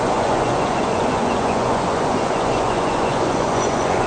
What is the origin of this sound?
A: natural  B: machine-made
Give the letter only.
B